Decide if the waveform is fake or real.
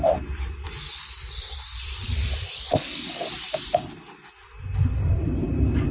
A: fake